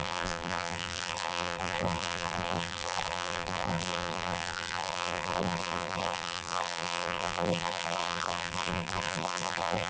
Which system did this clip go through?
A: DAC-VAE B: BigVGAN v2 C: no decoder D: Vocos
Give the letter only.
B